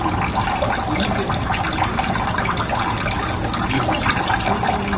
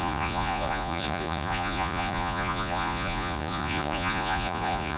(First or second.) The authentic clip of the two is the first